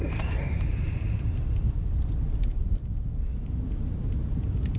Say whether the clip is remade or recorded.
recorded